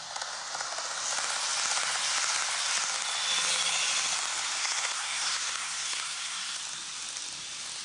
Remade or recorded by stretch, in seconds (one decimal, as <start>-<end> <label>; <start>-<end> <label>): 0.0-4.6 recorded; 4.6-6.6 remade; 6.6-7.8 recorded